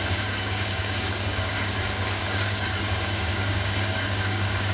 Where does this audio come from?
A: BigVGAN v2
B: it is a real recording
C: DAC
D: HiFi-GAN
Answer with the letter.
C